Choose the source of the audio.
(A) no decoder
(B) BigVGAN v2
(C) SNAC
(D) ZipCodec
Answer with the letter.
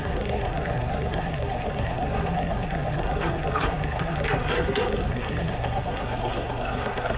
C